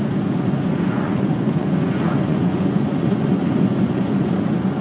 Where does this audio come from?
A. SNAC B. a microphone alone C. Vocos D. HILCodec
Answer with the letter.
C